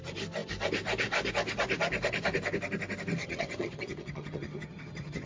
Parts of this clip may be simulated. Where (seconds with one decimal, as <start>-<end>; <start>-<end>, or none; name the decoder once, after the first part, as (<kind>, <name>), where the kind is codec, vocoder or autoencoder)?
3.2-5.3 (vocoder, HiFi-GAN)